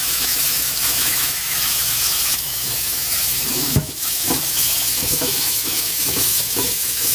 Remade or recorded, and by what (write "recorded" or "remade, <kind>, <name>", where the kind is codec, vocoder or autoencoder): remade, autoencoder, DAC-VAE